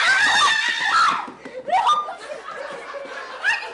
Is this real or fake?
real